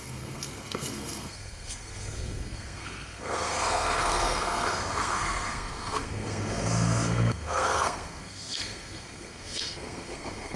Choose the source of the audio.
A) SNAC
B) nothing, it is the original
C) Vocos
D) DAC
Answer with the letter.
A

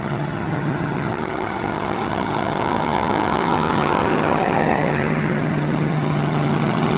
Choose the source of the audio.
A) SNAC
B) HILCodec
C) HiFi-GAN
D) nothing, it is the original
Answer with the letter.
C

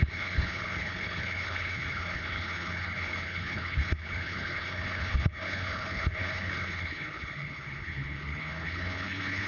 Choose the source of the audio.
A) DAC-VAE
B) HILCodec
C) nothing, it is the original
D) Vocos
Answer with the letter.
B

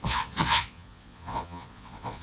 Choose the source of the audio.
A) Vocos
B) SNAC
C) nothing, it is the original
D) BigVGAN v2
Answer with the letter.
A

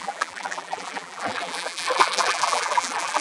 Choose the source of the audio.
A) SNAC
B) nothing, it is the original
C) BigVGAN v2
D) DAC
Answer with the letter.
C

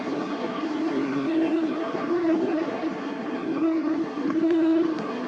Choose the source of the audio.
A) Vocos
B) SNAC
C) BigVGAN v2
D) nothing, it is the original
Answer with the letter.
B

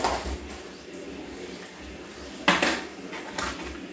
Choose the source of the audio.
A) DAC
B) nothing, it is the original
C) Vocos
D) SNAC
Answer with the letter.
B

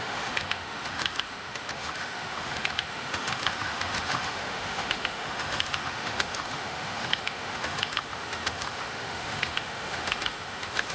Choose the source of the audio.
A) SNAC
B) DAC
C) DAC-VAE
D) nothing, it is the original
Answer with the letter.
C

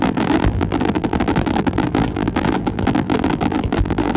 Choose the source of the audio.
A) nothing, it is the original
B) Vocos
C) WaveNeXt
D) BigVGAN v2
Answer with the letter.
D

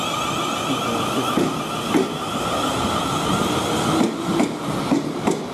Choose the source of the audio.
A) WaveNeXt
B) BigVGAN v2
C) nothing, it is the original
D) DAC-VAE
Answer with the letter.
C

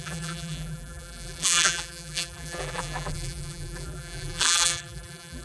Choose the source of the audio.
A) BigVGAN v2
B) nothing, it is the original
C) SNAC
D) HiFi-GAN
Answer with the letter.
A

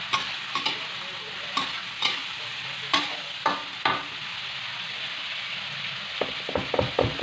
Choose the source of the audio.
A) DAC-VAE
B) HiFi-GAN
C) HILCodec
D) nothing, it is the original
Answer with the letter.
D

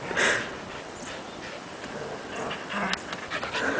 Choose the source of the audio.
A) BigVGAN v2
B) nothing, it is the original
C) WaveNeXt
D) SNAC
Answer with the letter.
B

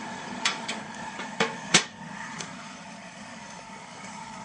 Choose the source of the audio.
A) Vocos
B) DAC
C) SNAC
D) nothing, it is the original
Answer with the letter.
B